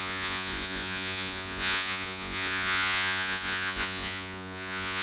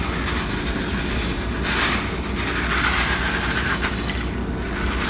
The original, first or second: second